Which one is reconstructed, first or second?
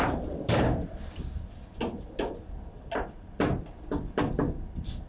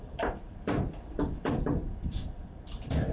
second